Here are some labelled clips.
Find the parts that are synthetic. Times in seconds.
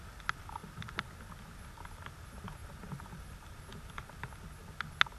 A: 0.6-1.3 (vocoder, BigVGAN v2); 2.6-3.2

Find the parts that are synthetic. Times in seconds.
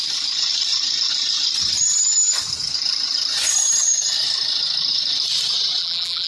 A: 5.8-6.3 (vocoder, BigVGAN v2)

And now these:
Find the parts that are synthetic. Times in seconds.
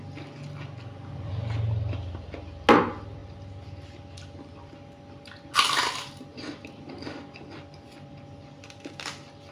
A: 6.3-6.9 (vocoder, BigVGAN v2)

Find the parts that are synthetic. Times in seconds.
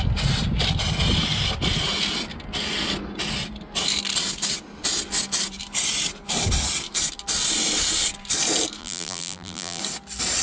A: 8.8-9.8 (vocoder, BigVGAN v2)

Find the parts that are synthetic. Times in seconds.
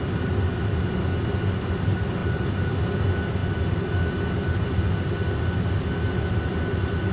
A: 2.2-2.9 (vocoder, BigVGAN v2)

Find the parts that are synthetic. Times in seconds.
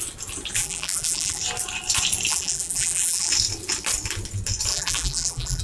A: 0.6-1.4 (vocoder, BigVGAN v2); 2.3-3.3; 4.7-5.6